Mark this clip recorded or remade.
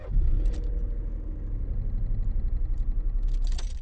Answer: recorded